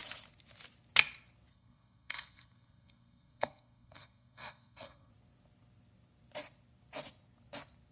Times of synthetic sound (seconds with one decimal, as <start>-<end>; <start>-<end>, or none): 1.5-5.1